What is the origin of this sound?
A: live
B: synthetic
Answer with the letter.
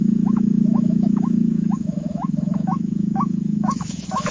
B